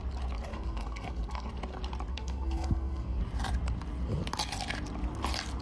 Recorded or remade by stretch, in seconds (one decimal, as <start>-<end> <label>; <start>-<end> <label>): 0.0-0.5 recorded; 0.5-1.5 remade; 1.5-2.1 recorded; 2.1-3.2 remade; 3.2-5.6 recorded